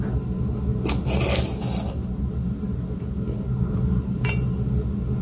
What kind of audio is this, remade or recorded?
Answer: recorded